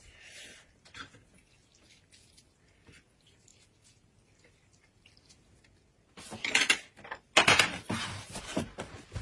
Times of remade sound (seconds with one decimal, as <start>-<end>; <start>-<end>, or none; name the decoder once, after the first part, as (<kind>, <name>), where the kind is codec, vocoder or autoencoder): none